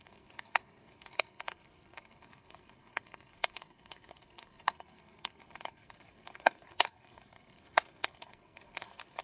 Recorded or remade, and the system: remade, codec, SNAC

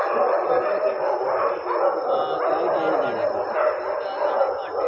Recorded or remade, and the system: recorded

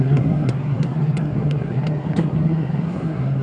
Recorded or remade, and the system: remade, codec, SNAC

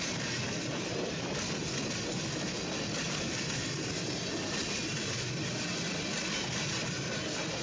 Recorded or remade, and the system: recorded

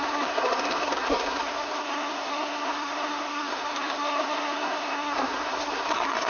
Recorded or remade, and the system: remade, codec, SNAC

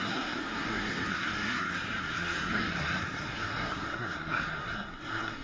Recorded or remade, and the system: remade, codec, SNAC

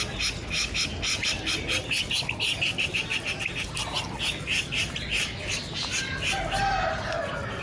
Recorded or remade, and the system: recorded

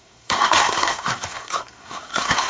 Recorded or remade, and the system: remade, codec, SNAC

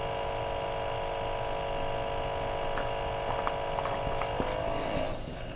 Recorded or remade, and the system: recorded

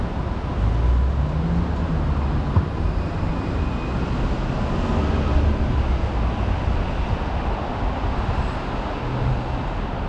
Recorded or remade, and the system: recorded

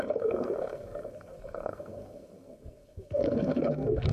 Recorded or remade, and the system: remade, codec, SNAC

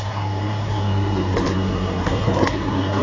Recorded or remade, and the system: remade, codec, SNAC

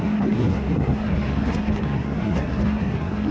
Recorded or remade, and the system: remade, codec, SNAC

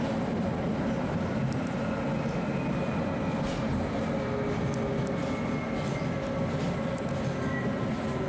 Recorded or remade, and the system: recorded